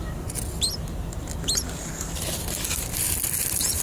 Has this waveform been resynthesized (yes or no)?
no